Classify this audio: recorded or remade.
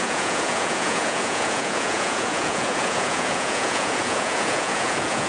remade